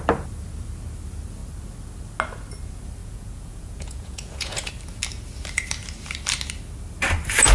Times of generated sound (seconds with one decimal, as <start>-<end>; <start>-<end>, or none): 3.0-4.7